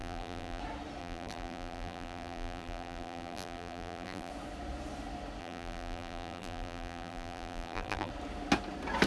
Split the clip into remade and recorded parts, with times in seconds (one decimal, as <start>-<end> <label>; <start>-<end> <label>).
0.0-0.6 remade; 0.6-1.0 recorded; 1.0-4.3 remade; 4.3-5.4 recorded; 5.4-8.1 remade; 8.1-9.1 recorded